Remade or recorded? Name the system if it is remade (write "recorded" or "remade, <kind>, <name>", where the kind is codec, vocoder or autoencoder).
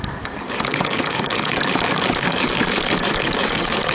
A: remade, codec, DAC